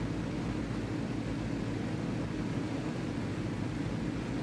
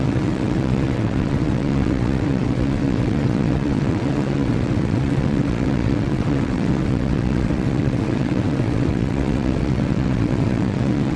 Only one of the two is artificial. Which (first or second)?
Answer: second